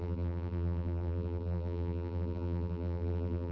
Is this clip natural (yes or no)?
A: no